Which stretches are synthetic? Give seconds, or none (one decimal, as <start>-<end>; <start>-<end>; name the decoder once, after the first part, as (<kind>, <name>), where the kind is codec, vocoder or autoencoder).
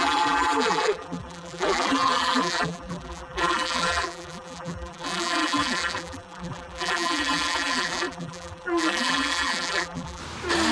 0.0-10.2 (vocoder, BigVGAN v2)